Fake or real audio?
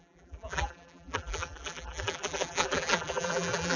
fake